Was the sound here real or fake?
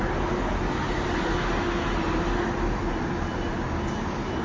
real